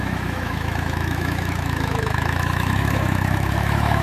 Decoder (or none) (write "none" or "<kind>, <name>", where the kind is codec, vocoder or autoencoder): autoencoder, DAC-VAE